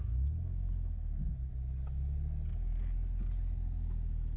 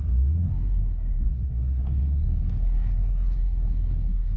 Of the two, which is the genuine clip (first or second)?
first